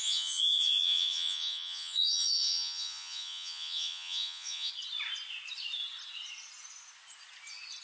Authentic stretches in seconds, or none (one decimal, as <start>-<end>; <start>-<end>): 4.7-7.8

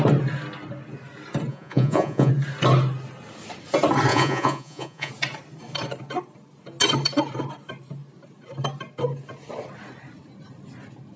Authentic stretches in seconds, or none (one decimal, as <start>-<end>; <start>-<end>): 0.0-1.5; 2.3-4.1; 5.1-11.2

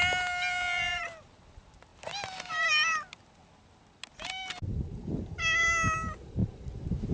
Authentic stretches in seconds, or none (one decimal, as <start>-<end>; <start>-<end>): 0.0-7.1

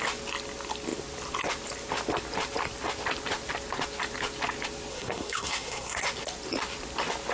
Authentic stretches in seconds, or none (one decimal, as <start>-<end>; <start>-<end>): 0.0-4.9; 6.0-7.3

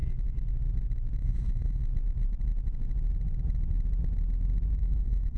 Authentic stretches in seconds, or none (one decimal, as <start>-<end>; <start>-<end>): 0.0-1.2; 1.8-4.8

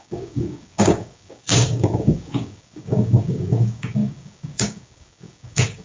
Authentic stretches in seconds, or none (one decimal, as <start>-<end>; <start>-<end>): none

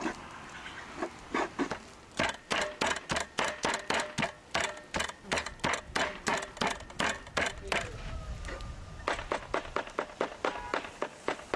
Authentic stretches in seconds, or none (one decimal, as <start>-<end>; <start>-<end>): 0.0-11.6